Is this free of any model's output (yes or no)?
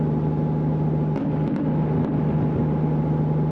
yes